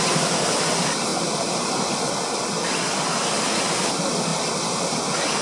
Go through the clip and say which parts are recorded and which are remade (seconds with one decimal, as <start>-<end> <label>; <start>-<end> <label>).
0.0-5.4 recorded